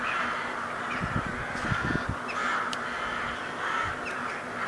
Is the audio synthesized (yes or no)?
no